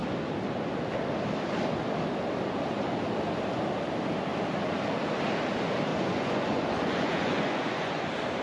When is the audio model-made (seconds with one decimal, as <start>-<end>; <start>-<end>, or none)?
5.9-8.0